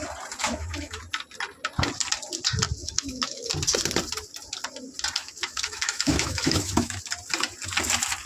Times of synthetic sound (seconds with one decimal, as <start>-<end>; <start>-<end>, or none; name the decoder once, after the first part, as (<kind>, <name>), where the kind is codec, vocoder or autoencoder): 0.4-1.0 (autoencoder, DAC-VAE); 2.8-3.5; 5.2-7.0